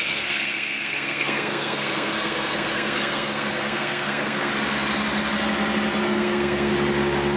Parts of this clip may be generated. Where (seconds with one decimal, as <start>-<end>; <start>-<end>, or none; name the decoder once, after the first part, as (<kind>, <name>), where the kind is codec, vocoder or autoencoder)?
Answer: 0.0-4.5 (codec, SNAC); 6.0-6.7